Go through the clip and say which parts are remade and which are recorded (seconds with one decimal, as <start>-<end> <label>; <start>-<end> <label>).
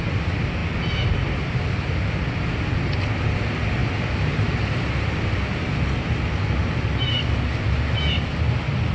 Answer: 0.0-3.8 recorded; 3.8-5.8 remade; 5.8-8.9 recorded